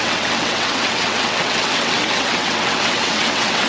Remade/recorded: remade